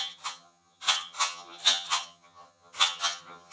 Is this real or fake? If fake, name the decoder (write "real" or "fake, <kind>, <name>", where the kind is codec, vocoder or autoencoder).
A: fake, vocoder, HiFi-GAN